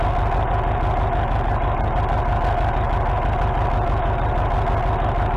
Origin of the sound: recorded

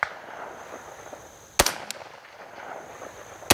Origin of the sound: recorded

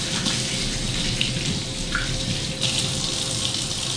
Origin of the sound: recorded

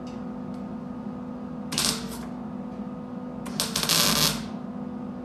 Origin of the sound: recorded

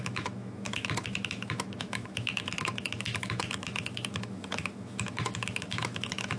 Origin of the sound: remade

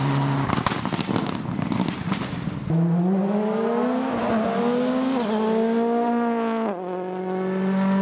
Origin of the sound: recorded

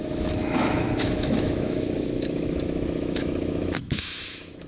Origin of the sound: remade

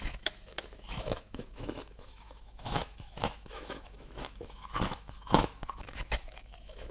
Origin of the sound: remade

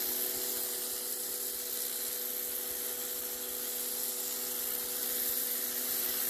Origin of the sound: recorded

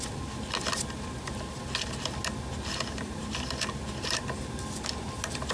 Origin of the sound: recorded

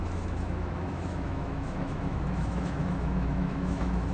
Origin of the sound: remade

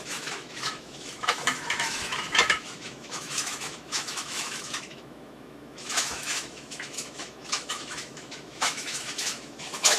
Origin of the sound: remade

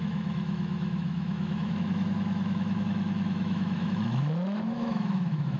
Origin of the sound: remade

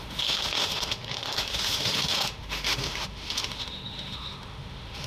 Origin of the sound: remade